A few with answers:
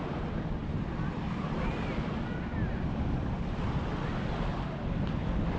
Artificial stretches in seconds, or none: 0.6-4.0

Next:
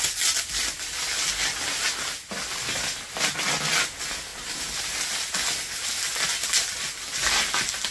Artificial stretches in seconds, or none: none

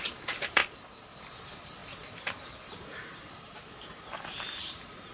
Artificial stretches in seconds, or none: 0.0-0.6; 1.2-1.8; 2.5-5.1

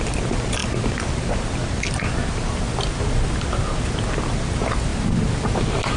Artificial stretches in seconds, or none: none

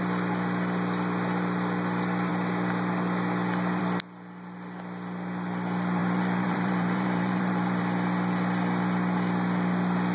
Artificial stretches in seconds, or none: 6.0-7.8